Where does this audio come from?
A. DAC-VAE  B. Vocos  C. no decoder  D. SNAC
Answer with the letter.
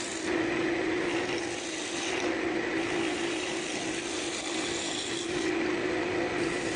C